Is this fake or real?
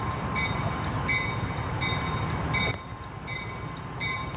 real